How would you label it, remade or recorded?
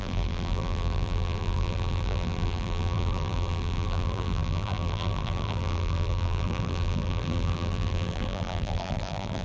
remade